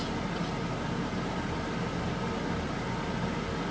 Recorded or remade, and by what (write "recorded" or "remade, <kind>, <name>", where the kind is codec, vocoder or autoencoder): recorded